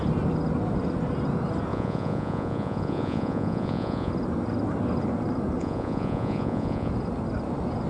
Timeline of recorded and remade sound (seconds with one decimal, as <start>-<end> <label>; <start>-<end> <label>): 0.0-1.7 recorded; 1.7-4.1 remade; 4.1-5.6 recorded; 5.6-6.9 remade; 6.9-7.9 recorded

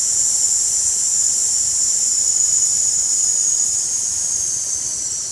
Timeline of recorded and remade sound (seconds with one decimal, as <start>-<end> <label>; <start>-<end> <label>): 0.0-1.2 recorded; 1.2-3.3 remade; 3.3-5.3 recorded

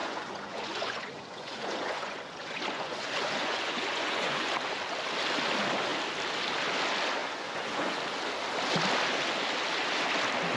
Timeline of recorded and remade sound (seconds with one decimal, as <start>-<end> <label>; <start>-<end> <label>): 0.0-4.5 remade; 4.5-7.2 recorded; 7.2-8.0 remade; 8.0-10.6 recorded

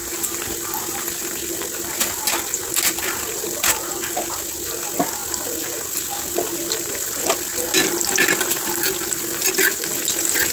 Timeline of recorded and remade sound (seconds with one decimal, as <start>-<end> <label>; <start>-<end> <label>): 0.0-10.5 recorded

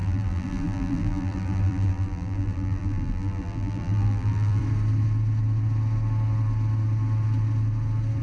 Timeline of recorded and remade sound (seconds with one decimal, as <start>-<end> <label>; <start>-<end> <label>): 0.0-4.6 remade; 4.6-8.2 recorded

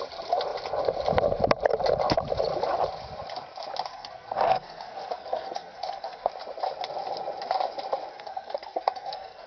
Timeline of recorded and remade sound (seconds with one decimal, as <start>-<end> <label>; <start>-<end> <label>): 0.0-3.9 recorded; 3.9-6.3 remade; 6.3-8.1 recorded; 8.1-9.5 remade

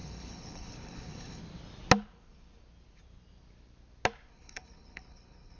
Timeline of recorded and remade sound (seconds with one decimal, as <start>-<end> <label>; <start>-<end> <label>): 0.0-1.4 remade; 1.4-4.3 recorded; 4.3-5.6 remade

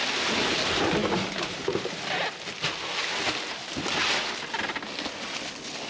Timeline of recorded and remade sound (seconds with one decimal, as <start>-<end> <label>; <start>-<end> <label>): 0.0-5.9 recorded